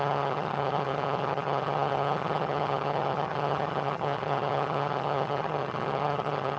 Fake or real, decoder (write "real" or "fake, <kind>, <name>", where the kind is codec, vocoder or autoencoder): fake, vocoder, HiFi-GAN